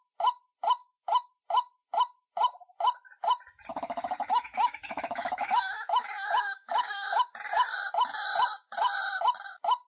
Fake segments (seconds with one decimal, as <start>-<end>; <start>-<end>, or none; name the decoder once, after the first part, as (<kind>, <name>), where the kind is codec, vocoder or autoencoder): 0.8-1.3 (autoencoder, DAC-VAE); 3.7-7.3